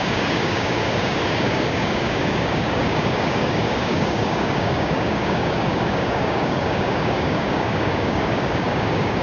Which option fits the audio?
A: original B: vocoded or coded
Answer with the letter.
B